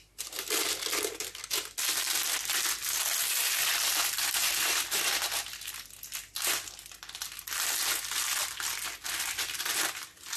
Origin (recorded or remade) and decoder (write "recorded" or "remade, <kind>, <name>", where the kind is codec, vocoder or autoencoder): recorded